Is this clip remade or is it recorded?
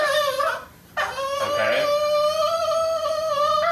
recorded